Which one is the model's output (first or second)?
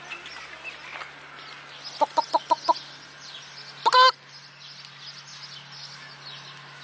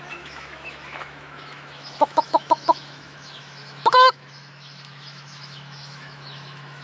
second